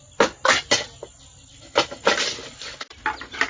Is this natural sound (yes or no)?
yes